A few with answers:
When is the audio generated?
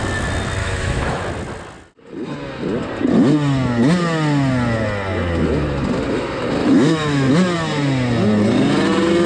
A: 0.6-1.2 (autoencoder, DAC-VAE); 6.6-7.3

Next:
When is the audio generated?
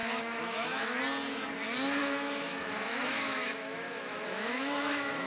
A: 0.0-1.0 (autoencoder, DAC-VAE); 2.0-5.3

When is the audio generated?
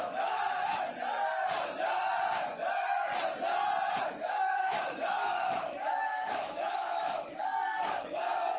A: 0.0-0.9 (autoencoder, DAC-VAE); 2.4-3.1; 4.1-7.5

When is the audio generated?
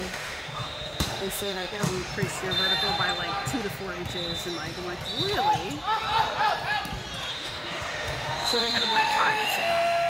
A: 0.0-2.1 (autoencoder, DAC-VAE); 7.3-10.1